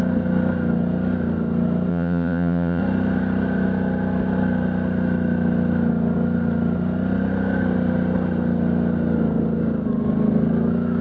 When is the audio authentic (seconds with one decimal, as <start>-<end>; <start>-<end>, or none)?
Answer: 0.0-1.9; 2.8-11.0